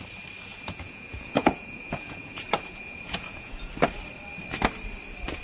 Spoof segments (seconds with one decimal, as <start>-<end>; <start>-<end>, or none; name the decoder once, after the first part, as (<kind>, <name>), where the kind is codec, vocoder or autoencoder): 0.5-3.7 (vocoder, Vocos)